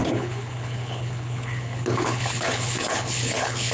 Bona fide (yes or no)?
no